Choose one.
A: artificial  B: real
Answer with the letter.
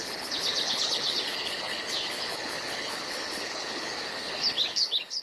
A